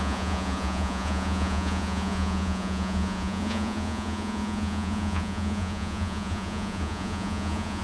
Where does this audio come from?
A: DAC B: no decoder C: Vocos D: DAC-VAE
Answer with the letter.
C